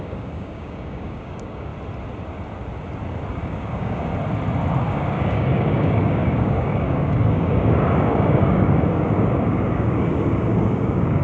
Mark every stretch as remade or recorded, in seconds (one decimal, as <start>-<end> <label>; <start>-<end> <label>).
0.0-1.7 remade; 1.7-3.4 recorded; 3.4-4.1 remade; 4.1-4.8 recorded; 4.8-11.2 remade